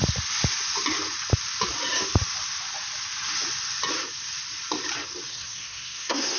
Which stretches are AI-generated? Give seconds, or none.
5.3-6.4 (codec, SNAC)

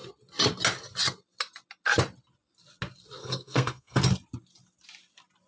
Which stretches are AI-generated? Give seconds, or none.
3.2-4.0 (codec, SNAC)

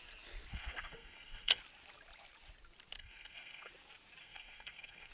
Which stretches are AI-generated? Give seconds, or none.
0.5-1.6 (codec, SNAC); 3.0-3.7; 4.2-5.1

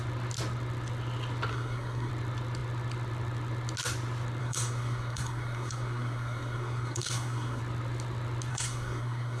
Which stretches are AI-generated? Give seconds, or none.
1.5-2.1 (codec, SNAC); 4.4-7.6; 8.5-9.4

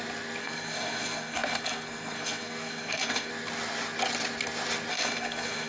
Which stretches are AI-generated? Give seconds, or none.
0.4-3.3 (codec, SNAC); 4.9-5.7

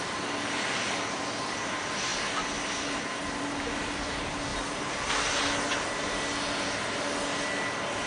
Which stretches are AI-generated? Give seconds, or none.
none

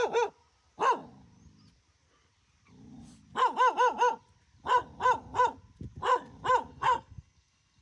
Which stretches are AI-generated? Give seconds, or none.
6.7-7.8 (codec, SNAC)